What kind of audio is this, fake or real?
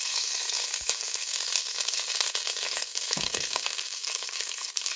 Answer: fake